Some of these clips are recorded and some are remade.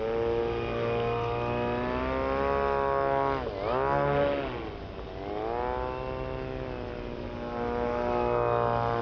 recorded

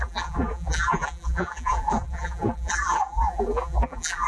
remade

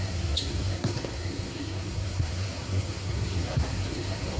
remade